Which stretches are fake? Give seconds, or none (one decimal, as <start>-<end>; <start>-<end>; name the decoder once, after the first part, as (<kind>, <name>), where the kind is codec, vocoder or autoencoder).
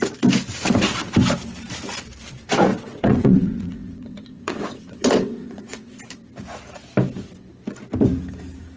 2.7-6.0 (vocoder, WaveNeXt)